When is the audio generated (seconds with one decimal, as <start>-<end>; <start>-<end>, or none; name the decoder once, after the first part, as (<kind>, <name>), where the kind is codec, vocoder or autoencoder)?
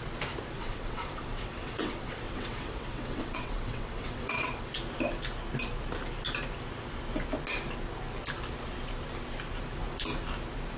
0.6-4.7 (vocoder, WaveNeXt)